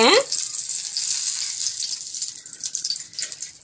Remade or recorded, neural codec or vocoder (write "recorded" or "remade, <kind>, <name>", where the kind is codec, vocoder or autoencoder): recorded